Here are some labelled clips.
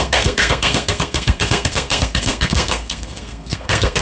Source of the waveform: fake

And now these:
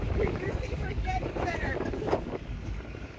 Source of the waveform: fake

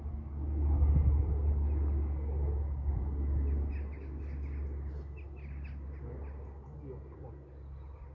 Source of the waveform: real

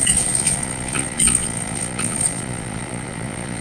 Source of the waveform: fake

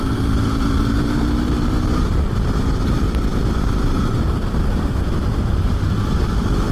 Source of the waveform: fake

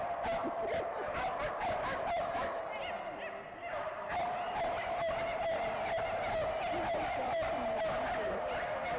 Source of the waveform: real